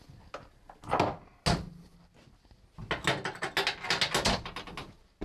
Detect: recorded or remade recorded